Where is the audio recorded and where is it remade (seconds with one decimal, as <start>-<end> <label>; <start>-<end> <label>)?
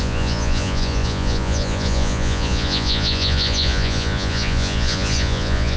0.0-5.8 remade